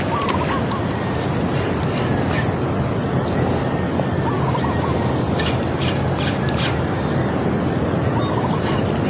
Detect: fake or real real